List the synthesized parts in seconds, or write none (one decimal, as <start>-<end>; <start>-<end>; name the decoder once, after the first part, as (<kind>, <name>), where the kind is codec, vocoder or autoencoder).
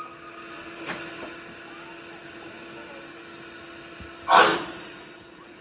4.5-5.6 (vocoder, Vocos)